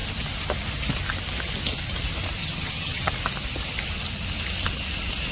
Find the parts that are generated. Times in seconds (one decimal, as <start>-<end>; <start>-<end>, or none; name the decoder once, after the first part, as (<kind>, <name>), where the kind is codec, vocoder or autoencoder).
2.4-3.1 (vocoder, HiFi-GAN)